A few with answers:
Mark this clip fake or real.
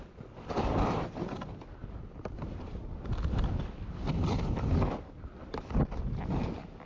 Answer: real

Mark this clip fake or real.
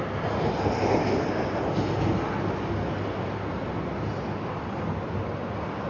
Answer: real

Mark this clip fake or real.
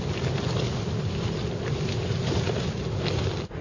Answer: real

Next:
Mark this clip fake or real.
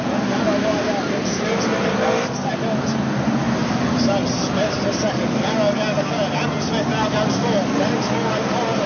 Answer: real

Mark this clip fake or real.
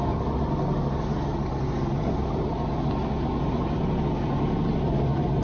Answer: real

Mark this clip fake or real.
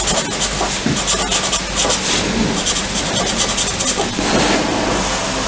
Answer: real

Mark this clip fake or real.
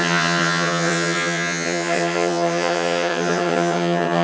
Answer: fake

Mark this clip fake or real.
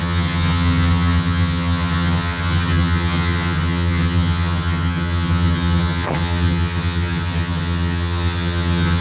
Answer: fake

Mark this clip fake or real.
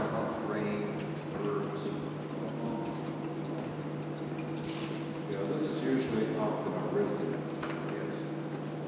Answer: real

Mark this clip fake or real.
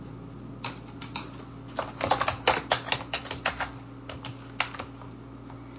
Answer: real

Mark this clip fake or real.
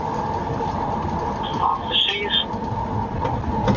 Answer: real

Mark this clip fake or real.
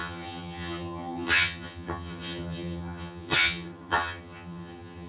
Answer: fake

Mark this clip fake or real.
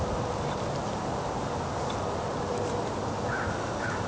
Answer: real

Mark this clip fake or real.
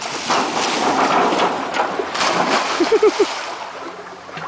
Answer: real